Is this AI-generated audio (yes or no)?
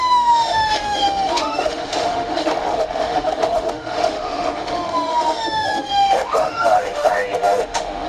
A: yes